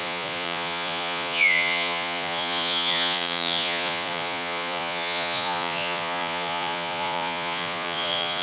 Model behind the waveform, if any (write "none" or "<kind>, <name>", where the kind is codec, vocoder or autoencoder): vocoder, Vocos